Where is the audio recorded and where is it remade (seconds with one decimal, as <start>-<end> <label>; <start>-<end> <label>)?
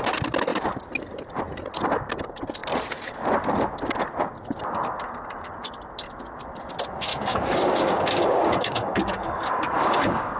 0.0-7.1 recorded; 7.1-10.4 remade